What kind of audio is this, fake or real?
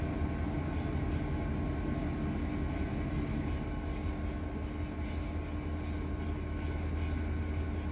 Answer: real